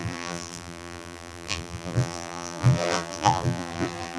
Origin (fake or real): fake